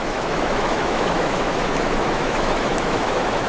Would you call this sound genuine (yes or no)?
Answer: no